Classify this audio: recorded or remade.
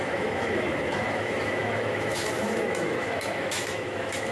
remade